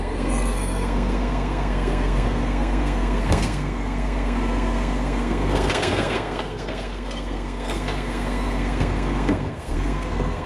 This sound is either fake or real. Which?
fake